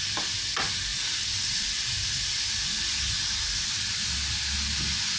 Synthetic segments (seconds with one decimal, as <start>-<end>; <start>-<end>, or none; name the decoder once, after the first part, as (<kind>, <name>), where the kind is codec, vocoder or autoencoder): none